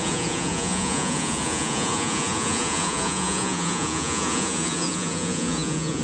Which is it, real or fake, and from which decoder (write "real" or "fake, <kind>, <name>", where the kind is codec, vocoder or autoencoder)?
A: fake, vocoder, Vocos